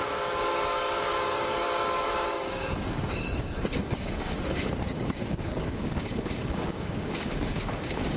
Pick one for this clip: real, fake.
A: fake